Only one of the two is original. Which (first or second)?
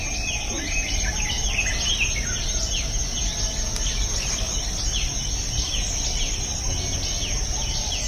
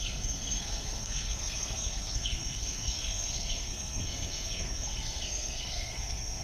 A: first